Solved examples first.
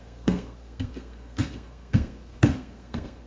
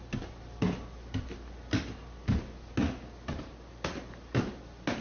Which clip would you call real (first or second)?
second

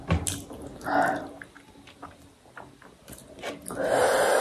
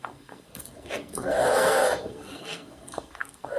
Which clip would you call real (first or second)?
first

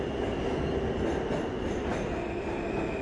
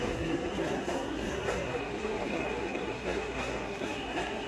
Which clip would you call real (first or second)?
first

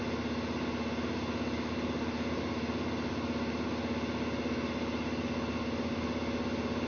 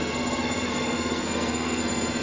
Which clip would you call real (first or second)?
first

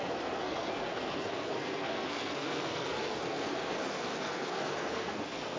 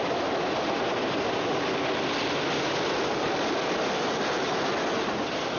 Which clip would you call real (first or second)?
second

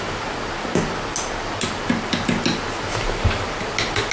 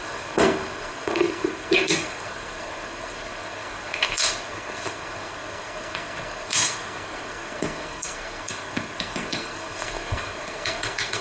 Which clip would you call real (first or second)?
first